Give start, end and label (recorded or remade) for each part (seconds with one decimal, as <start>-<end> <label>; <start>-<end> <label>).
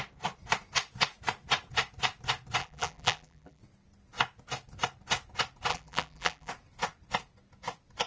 0.0-2.6 recorded; 2.6-3.6 remade; 3.6-5.7 recorded; 5.7-6.5 remade; 6.5-8.1 recorded